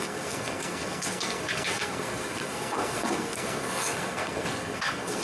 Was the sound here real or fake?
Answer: fake